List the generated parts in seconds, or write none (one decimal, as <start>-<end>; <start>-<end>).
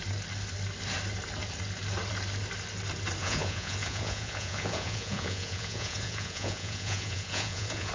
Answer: 3.2-7.9